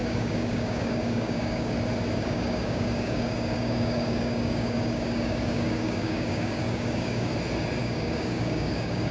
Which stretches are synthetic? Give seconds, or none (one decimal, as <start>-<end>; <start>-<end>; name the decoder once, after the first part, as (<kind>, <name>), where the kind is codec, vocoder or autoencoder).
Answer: 0.0-1.7 (codec, DAC); 2.1-7.3; 7.8-9.1